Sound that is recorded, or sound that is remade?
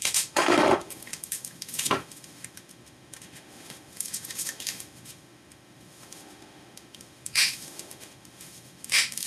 remade